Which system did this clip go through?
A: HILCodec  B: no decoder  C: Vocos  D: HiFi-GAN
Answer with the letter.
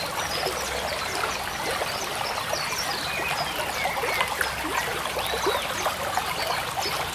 B